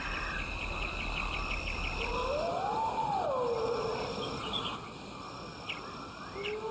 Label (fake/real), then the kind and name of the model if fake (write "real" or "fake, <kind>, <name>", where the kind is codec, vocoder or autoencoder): real